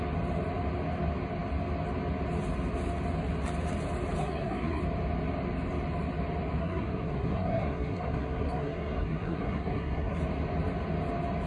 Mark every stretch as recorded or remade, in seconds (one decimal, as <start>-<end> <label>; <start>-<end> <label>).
0.0-4.2 recorded; 4.2-4.8 remade; 4.8-6.6 recorded; 6.6-10.2 remade; 10.2-11.5 recorded